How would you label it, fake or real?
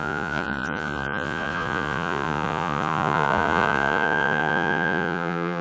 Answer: fake